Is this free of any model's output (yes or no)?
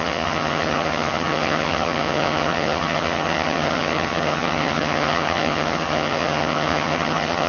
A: no